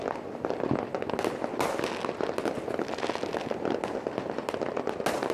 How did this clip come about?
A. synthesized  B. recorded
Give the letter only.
B